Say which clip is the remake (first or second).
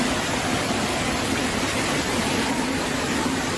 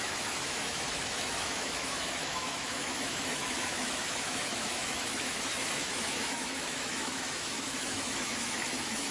second